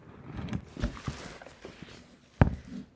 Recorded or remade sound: recorded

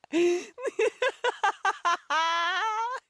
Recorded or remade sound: recorded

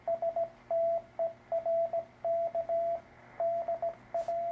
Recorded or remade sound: recorded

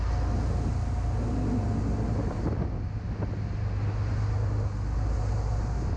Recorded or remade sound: recorded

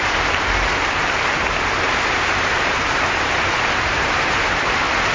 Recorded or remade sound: remade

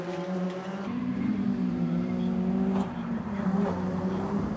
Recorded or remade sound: remade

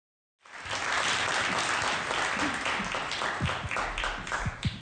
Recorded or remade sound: recorded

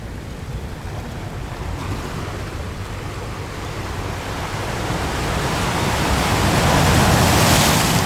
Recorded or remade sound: recorded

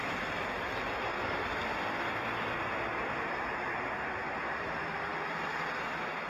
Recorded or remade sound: remade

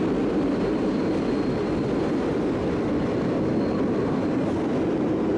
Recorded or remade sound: recorded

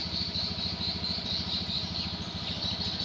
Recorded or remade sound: remade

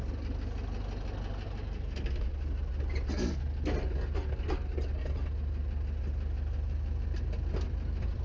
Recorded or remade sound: recorded